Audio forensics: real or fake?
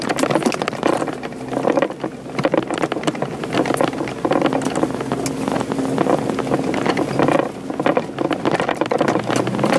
real